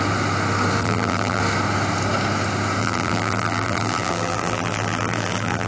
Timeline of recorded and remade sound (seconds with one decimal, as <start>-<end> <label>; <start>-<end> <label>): 0.0-0.8 recorded; 0.8-1.4 remade; 1.4-2.8 recorded; 2.8-5.7 remade

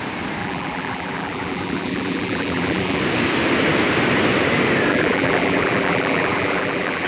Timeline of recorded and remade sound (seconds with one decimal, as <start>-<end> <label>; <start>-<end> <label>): 0.0-0.4 recorded; 0.4-3.0 remade; 3.0-4.9 recorded; 4.9-7.1 remade

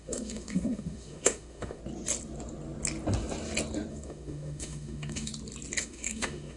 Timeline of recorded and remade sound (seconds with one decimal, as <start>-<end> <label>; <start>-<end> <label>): 0.0-1.8 remade; 1.8-3.9 recorded; 3.9-5.3 remade; 5.3-5.8 recorded; 5.8-6.6 remade

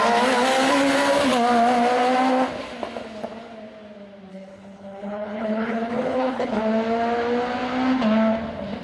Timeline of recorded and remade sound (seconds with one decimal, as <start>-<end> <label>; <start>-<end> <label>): 0.0-4.3 recorded; 4.3-6.6 remade; 6.6-8.8 recorded